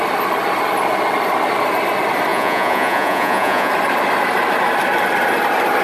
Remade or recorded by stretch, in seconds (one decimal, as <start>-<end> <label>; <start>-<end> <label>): 0.0-2.3 recorded; 2.3-3.7 remade; 3.7-5.8 recorded